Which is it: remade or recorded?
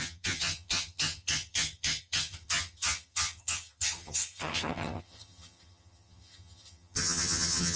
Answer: remade